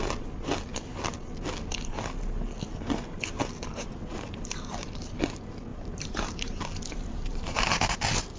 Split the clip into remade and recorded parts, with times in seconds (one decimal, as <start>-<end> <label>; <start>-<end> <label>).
0.0-5.7 recorded; 5.7-7.9 remade; 7.9-8.4 recorded